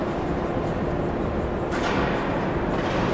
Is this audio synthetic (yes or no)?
no